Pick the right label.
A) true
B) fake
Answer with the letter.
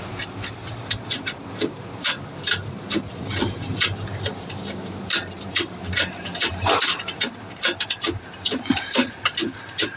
B